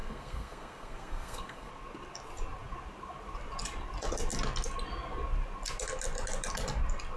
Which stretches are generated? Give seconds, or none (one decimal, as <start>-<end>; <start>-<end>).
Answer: 0.0-1.7

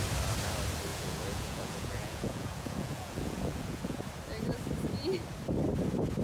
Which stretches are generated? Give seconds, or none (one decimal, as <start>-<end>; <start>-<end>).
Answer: 0.9-4.0

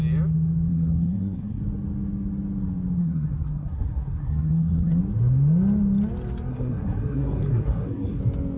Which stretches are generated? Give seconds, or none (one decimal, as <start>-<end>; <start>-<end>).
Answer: 0.7-1.6; 3.0-5.0; 6.5-8.2

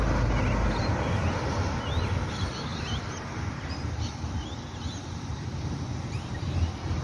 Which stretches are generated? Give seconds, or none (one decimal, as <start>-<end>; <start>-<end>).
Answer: 2.7-7.0

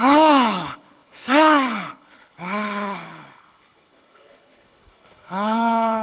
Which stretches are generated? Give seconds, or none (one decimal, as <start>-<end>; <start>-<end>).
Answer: 0.0-6.0

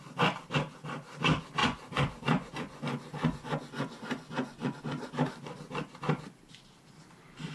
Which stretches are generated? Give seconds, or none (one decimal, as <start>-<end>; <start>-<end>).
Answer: 1.6-4.8

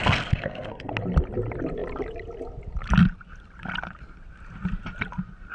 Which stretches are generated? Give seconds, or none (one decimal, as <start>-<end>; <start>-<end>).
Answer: 0.0-0.9